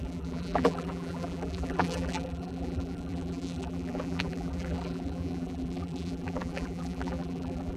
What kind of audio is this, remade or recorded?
remade